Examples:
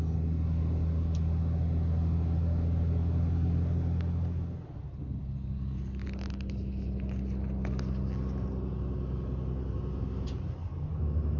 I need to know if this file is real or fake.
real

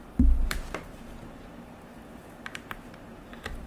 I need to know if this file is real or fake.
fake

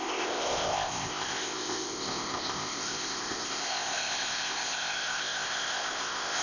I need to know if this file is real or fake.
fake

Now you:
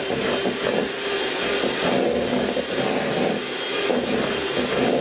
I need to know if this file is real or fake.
real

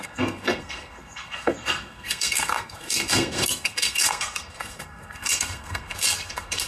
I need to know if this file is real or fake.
fake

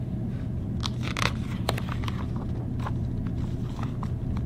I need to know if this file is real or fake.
real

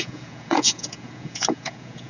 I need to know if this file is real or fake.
fake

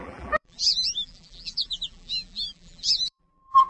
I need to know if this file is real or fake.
fake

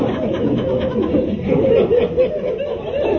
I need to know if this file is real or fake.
real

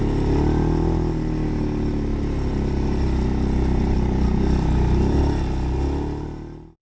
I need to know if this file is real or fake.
real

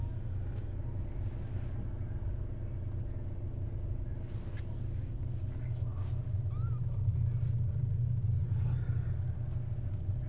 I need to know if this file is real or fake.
real